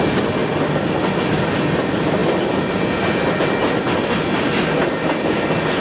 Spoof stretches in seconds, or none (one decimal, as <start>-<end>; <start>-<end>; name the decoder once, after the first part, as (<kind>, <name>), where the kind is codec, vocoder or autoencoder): none